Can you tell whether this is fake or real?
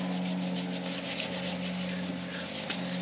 real